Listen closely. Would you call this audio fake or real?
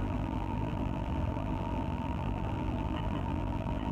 fake